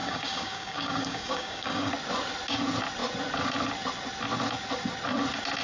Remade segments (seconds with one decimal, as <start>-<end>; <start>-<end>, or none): 0.0-1.9